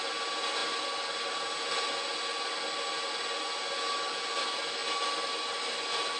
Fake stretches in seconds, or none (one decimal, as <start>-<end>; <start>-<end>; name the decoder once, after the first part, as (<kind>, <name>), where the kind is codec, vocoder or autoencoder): none